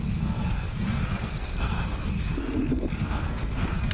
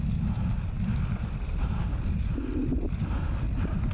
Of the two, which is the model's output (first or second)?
first